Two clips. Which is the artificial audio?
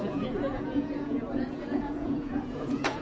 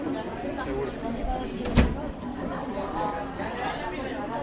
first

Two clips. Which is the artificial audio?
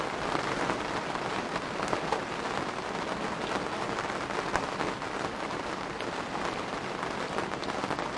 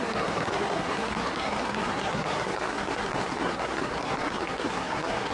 second